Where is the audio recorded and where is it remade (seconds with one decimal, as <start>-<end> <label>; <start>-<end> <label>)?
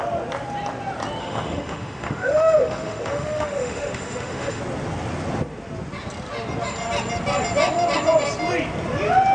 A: 0.0-1.2 recorded; 1.2-4.6 remade; 4.6-9.3 recorded